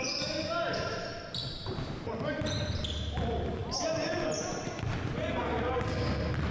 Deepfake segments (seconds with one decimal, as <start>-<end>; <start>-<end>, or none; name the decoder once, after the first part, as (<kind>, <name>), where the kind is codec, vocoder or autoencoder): 1.4-2.3 (vocoder, BigVGAN v2); 3.6-5.4